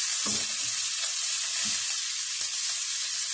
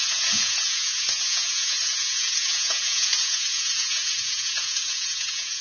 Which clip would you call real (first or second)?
first